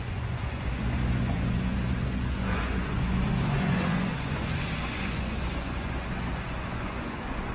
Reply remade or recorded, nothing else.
remade